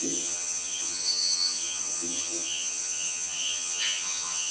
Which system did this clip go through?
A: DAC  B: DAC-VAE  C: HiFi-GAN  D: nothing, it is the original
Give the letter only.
C